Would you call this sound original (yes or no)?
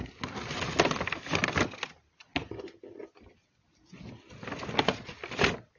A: yes